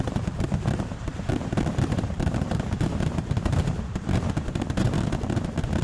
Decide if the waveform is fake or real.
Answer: fake